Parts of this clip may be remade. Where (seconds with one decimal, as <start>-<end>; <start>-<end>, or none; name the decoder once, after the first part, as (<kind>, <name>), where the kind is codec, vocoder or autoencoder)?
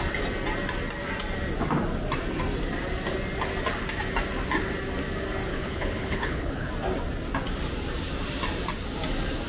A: 5.5-6.7 (codec, HILCodec)